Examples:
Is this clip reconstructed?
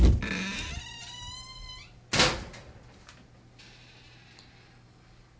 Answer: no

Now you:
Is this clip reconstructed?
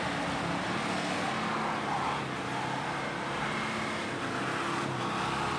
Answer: no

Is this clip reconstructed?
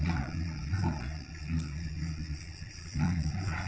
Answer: yes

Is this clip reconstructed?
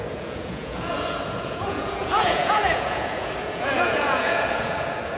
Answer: yes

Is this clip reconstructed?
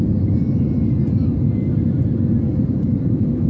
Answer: no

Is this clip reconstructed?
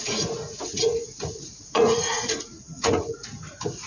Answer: yes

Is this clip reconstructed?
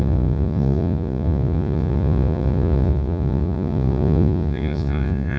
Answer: yes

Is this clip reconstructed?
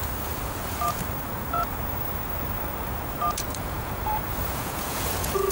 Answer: yes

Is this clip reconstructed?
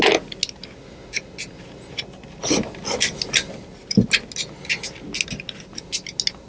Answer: no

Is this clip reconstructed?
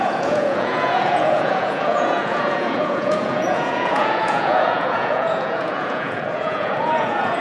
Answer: yes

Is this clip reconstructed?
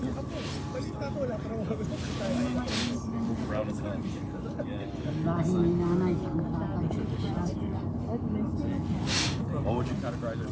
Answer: no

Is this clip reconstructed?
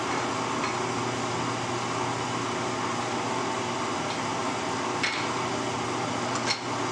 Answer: no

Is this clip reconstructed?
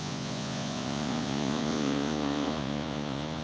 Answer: yes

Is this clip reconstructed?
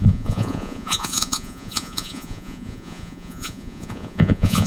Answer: yes